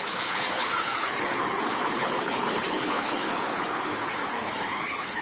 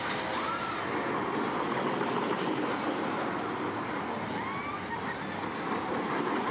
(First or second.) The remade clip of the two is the first